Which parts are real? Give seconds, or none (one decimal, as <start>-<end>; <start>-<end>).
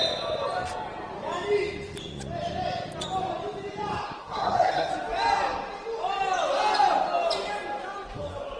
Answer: 0.0-4.2; 4.9-8.6